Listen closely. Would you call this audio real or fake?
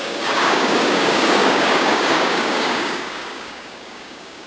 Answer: fake